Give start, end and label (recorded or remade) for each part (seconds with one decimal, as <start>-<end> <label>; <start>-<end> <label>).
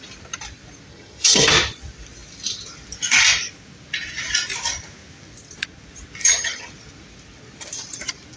0.0-0.9 recorded; 0.9-1.5 remade; 1.5-6.2 recorded; 6.2-6.7 remade; 6.7-8.4 recorded